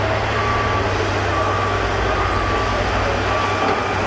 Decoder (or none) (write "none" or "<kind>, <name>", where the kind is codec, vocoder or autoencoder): none